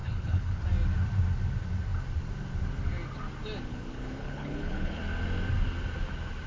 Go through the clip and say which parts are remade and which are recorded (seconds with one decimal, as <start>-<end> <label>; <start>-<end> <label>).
0.0-0.6 remade; 0.6-3.7 recorded; 3.7-5.0 remade; 5.0-6.5 recorded